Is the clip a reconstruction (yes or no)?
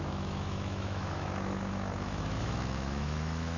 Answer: yes